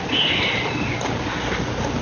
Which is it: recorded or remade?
recorded